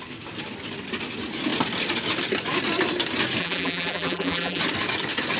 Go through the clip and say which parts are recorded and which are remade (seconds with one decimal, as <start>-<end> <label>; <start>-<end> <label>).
0.0-3.4 recorded; 3.4-4.6 remade; 4.6-5.4 recorded